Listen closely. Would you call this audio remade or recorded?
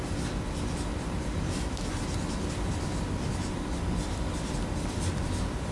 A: remade